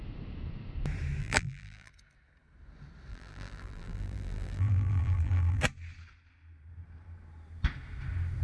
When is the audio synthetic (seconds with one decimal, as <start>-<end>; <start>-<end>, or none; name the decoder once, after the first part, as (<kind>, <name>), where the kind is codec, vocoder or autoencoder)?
1.2-1.9 (vocoder, BigVGAN v2); 3.1-5.6